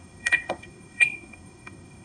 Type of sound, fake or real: fake